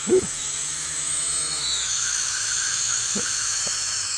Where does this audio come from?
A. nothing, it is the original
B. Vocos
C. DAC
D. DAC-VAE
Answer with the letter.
D